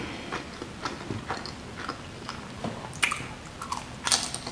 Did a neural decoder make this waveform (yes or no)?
no